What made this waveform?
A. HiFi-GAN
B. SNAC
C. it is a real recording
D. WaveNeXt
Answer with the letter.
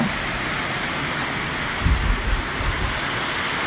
C